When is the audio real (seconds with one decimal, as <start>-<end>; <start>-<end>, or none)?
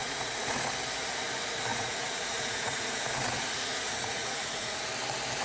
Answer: 0.7-1.7; 4.9-5.4